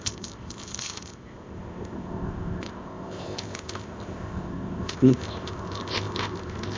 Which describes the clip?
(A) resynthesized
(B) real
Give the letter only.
A